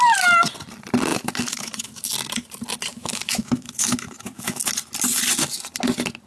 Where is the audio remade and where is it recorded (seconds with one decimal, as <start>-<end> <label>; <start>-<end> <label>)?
0.0-1.1 recorded; 1.1-2.1 remade; 2.1-2.9 recorded; 2.9-4.7 remade; 4.7-6.3 recorded